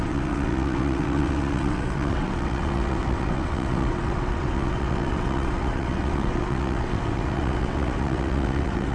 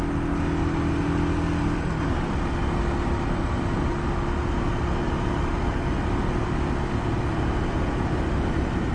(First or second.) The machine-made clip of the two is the first